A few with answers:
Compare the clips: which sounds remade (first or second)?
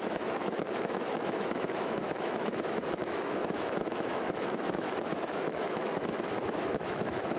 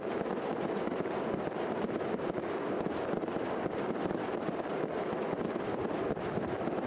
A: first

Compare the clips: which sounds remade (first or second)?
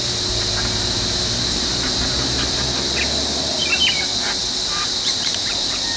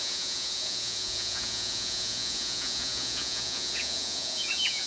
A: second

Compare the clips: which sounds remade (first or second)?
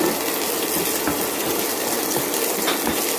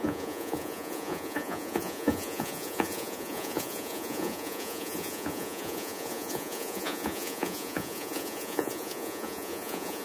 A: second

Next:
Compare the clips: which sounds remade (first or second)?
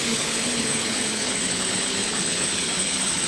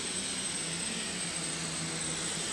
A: first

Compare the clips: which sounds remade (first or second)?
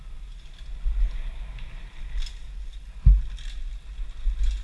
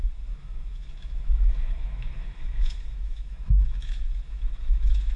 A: second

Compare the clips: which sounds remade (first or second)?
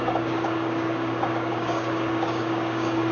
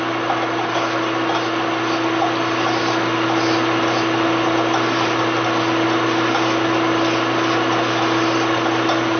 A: first